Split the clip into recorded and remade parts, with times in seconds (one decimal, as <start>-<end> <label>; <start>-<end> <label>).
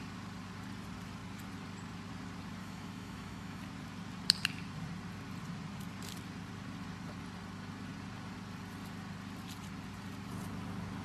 0.0-2.6 recorded; 2.6-3.6 remade; 3.6-11.0 recorded